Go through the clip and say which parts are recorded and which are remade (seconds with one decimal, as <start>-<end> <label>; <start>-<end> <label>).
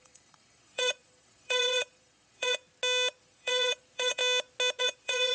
0.0-2.6 remade; 2.6-3.2 recorded; 3.2-4.2 remade; 4.2-4.8 recorded; 4.8-5.3 remade